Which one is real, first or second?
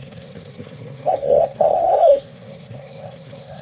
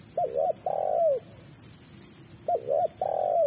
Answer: second